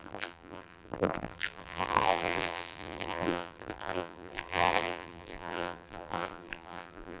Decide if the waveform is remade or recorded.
remade